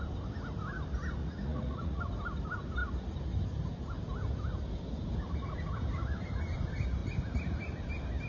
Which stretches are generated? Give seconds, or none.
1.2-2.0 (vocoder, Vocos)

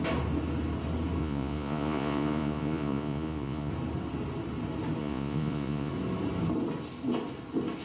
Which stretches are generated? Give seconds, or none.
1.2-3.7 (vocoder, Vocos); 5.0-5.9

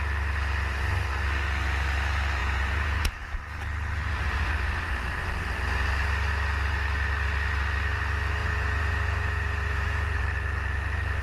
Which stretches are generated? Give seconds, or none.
2.4-3.1 (vocoder, Vocos); 8.4-10.2

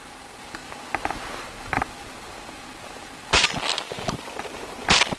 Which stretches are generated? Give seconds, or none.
none

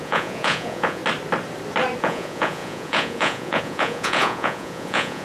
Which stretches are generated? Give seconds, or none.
0.0-1.0 (vocoder, Vocos); 2.0-5.2